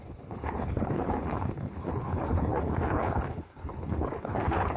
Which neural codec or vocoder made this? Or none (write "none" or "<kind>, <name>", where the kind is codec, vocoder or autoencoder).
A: codec, HILCodec